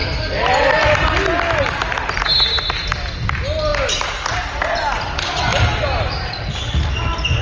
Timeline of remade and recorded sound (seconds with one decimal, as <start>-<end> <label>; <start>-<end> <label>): 0.0-7.4 recorded